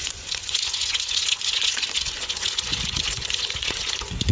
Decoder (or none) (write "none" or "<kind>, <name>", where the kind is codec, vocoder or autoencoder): vocoder, Vocos